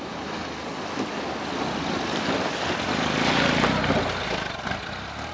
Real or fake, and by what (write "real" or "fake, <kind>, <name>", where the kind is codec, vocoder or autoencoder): real